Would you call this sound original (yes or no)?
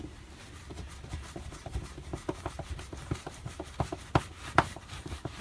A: yes